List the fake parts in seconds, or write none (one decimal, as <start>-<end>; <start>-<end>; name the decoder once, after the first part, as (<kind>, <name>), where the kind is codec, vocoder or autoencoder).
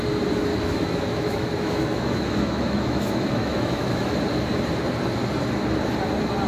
0.5-4.2 (autoencoder, DAC-VAE)